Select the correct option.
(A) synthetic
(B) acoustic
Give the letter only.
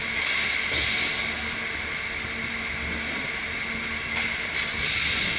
B